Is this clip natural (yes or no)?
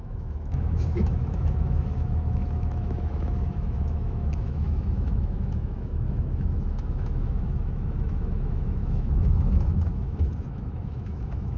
no